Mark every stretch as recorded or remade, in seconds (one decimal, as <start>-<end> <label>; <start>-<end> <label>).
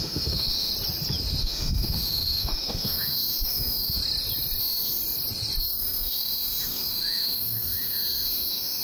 0.0-0.7 remade; 0.7-1.4 recorded; 1.4-4.0 remade; 4.0-4.6 recorded; 4.6-5.0 remade; 5.0-5.6 recorded; 5.6-8.8 remade